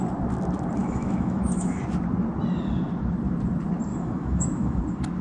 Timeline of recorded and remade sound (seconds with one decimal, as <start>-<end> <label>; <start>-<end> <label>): 0.0-0.8 recorded; 0.8-1.8 remade; 1.8-3.9 recorded; 3.9-4.8 remade; 4.8-5.2 recorded